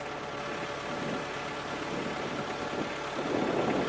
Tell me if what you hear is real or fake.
real